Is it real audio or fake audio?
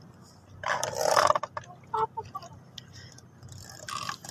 real